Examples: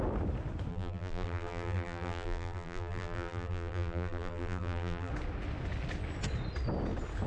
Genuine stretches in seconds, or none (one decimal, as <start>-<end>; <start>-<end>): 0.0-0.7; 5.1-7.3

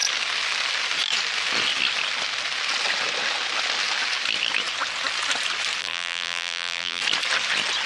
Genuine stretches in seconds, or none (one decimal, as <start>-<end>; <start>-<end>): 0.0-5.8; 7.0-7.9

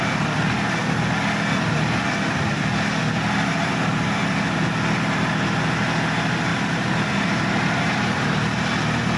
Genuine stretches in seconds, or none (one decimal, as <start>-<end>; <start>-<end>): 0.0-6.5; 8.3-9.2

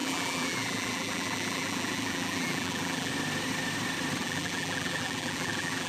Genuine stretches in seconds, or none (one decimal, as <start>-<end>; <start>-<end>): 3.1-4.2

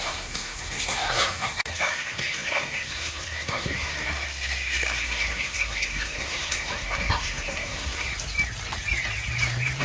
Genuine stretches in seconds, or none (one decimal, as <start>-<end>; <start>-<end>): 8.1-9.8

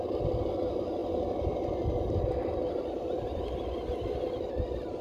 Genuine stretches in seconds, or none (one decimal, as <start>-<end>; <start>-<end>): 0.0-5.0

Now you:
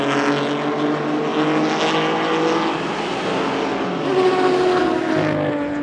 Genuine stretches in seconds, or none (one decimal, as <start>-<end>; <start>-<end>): 0.0-5.8

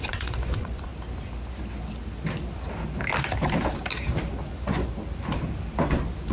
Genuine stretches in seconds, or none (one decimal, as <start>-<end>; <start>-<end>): 0.9-4.5; 4.9-6.3